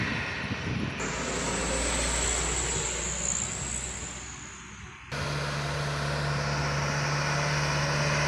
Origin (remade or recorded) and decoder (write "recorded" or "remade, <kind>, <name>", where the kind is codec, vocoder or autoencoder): recorded